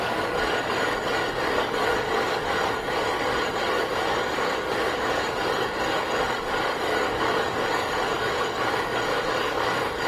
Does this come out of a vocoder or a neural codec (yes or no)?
yes